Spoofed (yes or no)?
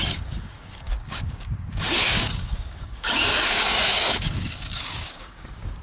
yes